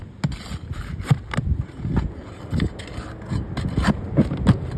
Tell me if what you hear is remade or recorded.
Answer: recorded